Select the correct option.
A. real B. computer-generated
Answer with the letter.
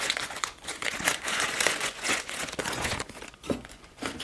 B